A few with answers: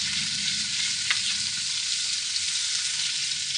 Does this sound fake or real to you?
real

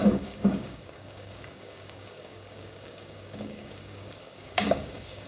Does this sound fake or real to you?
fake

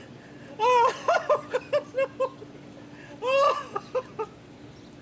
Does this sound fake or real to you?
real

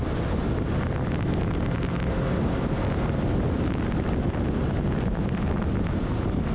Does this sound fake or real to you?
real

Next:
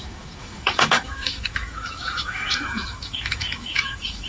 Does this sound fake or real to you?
fake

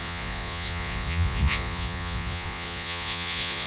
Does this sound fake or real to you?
fake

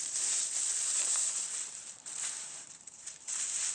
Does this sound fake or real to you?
fake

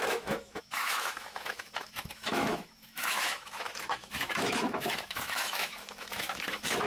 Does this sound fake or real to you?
fake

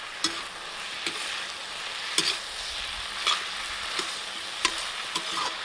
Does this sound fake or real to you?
real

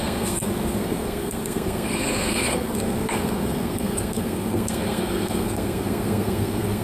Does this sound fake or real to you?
fake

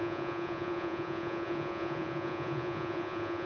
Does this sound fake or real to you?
fake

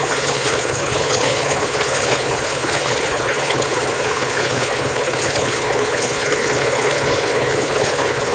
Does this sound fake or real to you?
fake